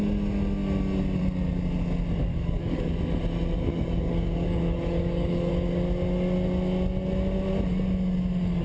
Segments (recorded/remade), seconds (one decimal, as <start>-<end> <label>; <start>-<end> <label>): 0.0-2.3 recorded; 2.3-2.9 remade; 2.9-3.7 recorded; 3.7-5.5 remade; 5.5-8.6 recorded